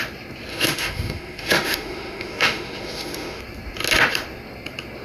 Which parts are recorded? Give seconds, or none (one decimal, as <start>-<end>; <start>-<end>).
0.0-0.5; 3.4-5.0